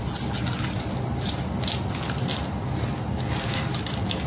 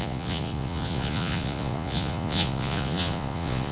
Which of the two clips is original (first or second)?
first